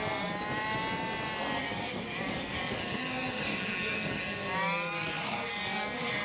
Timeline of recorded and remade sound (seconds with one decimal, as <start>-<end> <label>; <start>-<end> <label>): 0.0-1.6 recorded; 1.6-6.2 remade